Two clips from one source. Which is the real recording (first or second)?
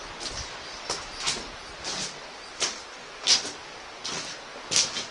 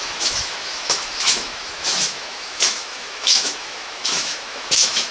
first